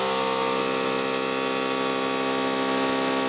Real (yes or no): yes